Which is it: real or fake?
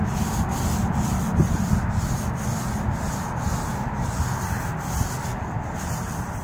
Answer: real